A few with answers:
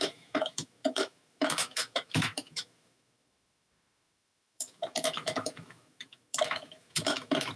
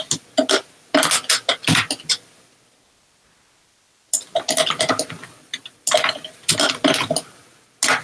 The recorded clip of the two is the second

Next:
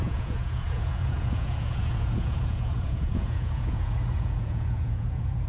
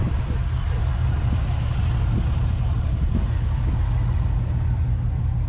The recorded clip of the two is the second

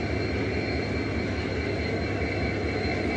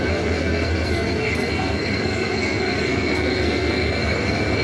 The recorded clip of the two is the first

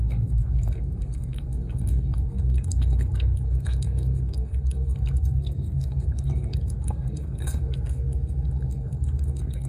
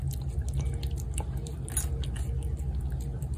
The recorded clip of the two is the second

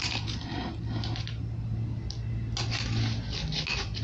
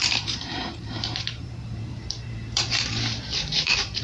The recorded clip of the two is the first